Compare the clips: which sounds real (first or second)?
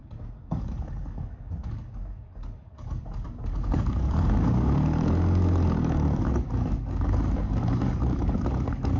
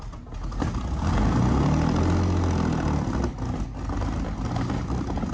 second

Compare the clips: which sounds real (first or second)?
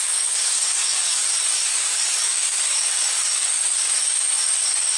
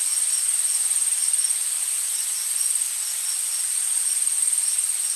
second